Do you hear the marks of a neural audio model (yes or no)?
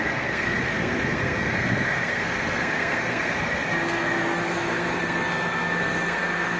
yes